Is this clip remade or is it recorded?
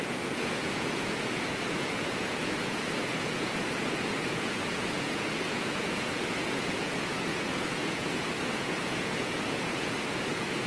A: remade